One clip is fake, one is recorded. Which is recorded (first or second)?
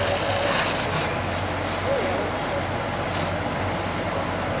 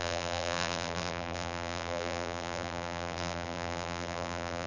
first